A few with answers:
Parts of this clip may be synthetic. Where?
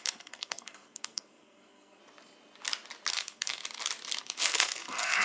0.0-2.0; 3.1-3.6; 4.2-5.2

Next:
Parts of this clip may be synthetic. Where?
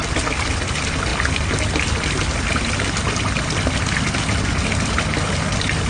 none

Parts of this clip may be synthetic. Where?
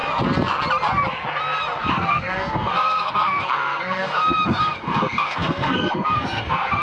1.9-6.8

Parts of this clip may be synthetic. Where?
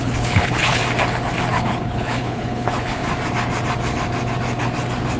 0.0-0.8; 1.5-3.0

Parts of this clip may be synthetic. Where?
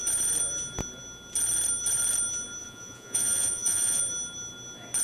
2.6-4.0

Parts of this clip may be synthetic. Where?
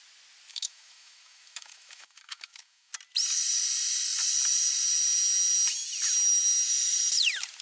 0.5-2.9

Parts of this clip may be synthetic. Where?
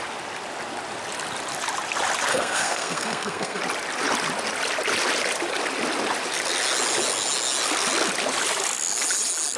2.3-3.6